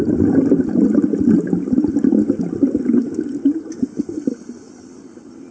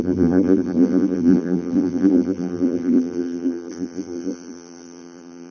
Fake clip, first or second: second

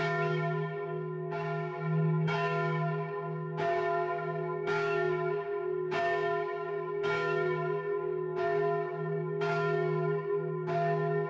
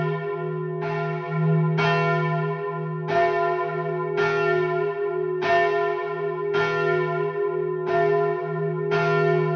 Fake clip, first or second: first